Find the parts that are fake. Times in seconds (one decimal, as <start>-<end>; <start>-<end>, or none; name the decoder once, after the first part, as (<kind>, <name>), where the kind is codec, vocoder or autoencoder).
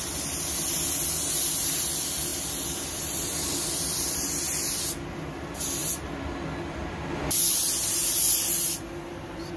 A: none